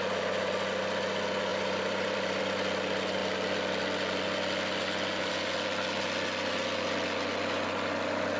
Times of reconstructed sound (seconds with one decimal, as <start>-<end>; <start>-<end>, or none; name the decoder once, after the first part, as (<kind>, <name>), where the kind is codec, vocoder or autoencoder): 1.5-2.4 (vocoder, BigVGAN v2)